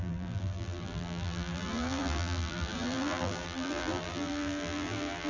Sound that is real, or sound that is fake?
fake